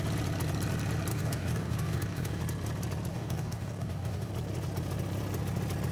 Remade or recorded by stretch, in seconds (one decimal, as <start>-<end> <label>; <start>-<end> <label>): 0.0-1.1 recorded; 1.1-2.4 remade; 2.4-3.1 recorded; 3.1-4.3 remade; 4.3-5.9 recorded